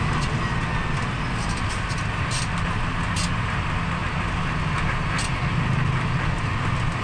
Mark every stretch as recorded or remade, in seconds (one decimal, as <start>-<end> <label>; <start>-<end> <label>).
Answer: 0.0-7.0 recorded